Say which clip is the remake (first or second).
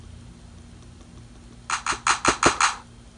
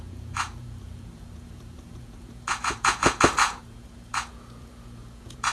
second